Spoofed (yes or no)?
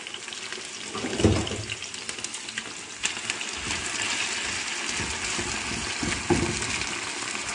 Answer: no